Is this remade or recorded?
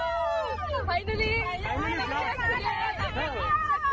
recorded